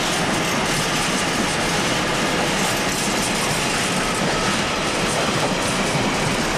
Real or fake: real